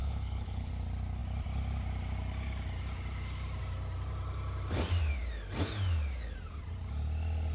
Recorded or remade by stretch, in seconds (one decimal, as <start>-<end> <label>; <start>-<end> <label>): 0.0-0.7 remade; 0.7-7.5 recorded